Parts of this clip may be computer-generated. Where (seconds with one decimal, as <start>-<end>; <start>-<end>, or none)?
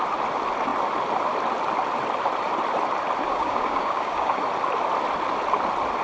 3.3-4.4